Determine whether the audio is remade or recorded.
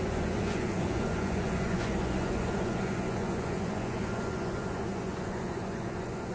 remade